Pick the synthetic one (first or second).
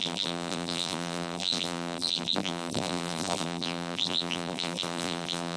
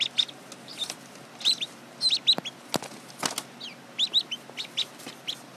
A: first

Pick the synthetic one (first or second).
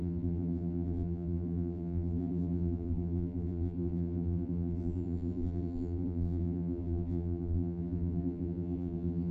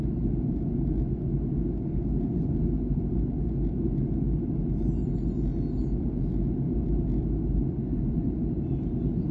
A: first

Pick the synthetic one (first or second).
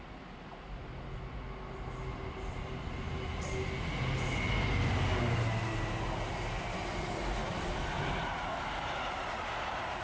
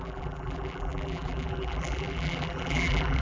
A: second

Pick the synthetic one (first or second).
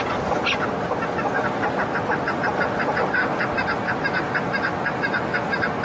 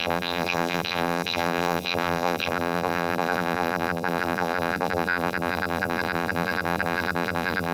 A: second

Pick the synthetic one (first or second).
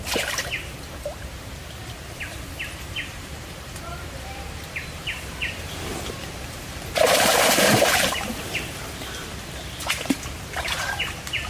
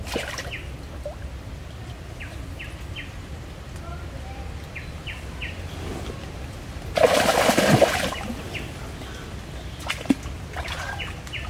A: first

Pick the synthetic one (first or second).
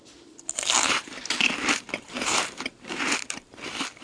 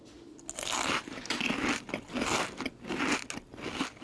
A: first